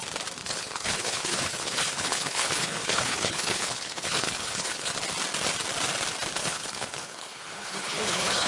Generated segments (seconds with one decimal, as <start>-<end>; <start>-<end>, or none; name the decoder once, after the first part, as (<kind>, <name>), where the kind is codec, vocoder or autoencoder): 0.4-4.9 (codec, HILCodec); 6.4-8.5